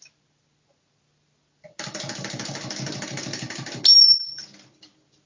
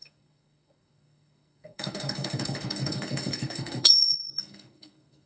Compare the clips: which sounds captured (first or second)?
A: first